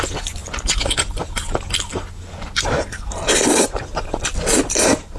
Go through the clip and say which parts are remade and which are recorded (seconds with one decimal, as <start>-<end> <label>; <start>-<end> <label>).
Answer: 0.0-5.2 recorded